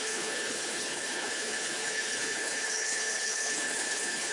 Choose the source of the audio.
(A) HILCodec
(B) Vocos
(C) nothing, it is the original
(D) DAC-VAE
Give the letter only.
A